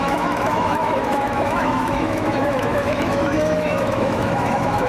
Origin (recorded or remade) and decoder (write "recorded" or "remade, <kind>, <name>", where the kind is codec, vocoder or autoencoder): remade, autoencoder, DAC-VAE